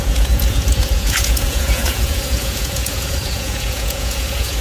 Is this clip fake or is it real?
fake